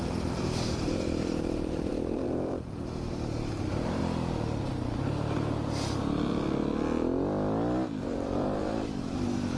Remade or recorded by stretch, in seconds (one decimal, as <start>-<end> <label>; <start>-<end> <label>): 0.0-4.0 remade; 4.0-8.0 recorded; 8.0-9.6 remade